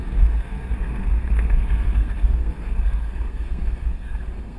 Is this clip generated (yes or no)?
yes